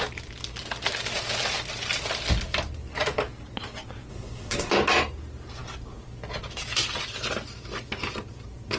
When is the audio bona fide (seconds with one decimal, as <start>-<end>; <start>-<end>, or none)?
0.0-4.1; 4.7-8.8